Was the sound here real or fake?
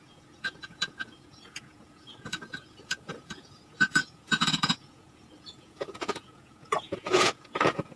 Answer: fake